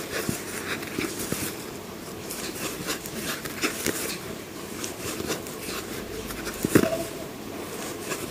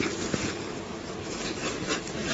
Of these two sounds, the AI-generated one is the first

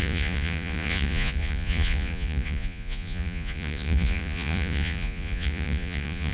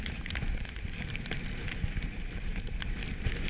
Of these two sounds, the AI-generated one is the first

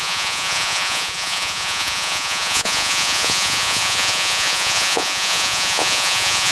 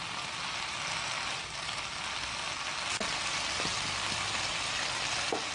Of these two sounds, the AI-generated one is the first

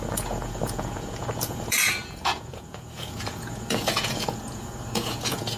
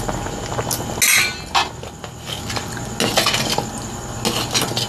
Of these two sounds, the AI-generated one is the first